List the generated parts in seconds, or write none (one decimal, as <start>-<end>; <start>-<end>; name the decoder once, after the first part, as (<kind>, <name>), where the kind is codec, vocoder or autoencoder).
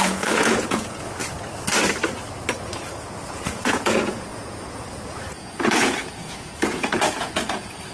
0.0-1.2 (vocoder, Vocos); 3.3-7.9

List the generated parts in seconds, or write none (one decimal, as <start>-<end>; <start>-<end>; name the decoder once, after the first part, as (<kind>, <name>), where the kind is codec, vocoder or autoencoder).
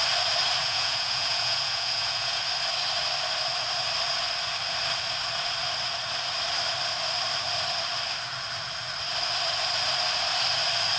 0.6-2.4 (vocoder, Vocos)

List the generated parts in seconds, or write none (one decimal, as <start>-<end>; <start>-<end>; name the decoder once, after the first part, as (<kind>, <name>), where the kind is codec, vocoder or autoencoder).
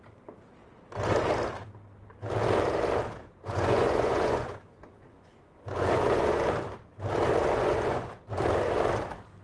3.2-6.4 (vocoder, Vocos); 7.4-8.1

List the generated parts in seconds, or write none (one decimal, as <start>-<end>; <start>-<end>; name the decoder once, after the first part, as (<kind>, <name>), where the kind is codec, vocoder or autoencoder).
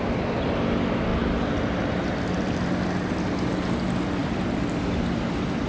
none